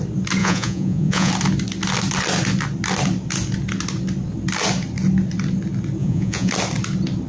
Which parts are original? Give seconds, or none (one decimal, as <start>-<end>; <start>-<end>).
0.0-0.4; 1.3-6.0; 6.5-7.3